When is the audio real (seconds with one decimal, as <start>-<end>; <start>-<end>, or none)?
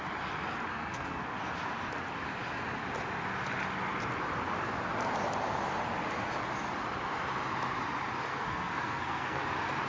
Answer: 0.0-0.7; 1.2-8.3; 9.4-9.9